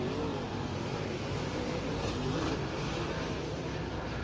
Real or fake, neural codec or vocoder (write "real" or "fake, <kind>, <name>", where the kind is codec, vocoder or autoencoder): fake, vocoder, BigVGAN v2